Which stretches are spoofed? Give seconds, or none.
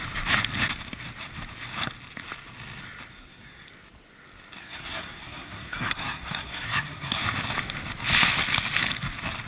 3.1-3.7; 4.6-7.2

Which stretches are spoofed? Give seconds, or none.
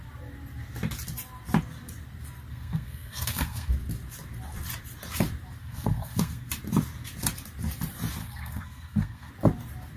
2.5-3.7; 5.6-6.5; 8.2-9.3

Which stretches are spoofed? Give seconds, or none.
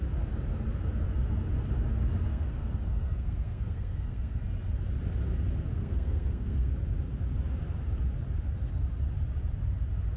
2.3-4.4; 5.7-6.7